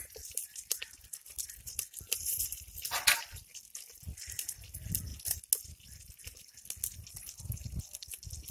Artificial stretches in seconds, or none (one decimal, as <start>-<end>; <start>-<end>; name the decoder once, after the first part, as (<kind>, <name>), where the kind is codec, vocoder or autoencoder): 0.0-5.1 (vocoder, BigVGAN v2); 8.1-8.5